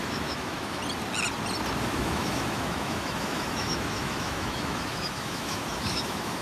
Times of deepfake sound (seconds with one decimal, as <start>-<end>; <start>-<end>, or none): 0.0-0.8; 1.8-6.4

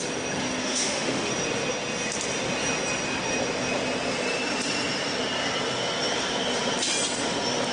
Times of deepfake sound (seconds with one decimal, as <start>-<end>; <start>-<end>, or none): 0.6-1.3

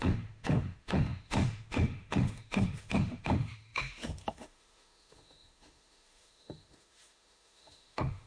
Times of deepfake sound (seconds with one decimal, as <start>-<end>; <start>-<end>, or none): 0.0-8.3

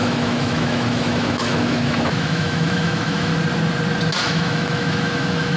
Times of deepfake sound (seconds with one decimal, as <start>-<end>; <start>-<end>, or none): 0.0-3.3; 4.2-5.6

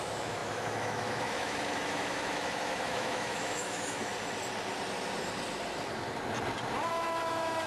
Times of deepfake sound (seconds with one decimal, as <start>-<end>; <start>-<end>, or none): 0.0-4.1; 6.9-7.7

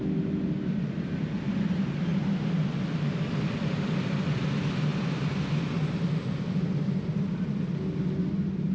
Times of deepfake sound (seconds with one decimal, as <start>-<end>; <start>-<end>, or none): none

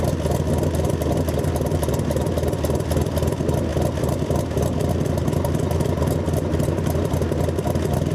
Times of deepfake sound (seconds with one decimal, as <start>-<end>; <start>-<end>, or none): none

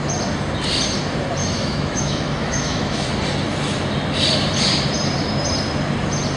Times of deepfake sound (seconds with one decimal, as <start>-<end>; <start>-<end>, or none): 1.4-3.1